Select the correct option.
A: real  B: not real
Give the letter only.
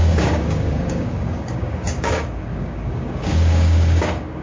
B